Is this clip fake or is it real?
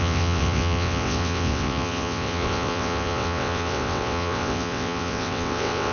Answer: fake